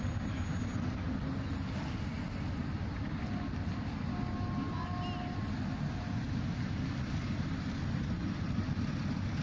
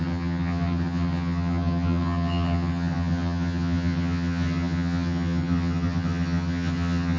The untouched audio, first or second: first